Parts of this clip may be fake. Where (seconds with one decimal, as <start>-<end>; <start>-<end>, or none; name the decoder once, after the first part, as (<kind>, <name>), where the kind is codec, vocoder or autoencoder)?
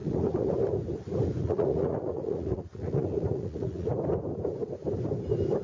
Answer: 0.0-0.5 (vocoder, Vocos); 1.4-3.9